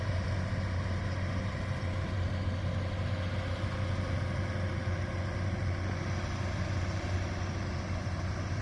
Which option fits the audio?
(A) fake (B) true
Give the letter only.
B